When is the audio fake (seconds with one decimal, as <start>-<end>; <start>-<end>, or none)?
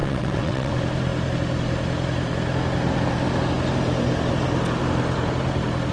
0.0-0.7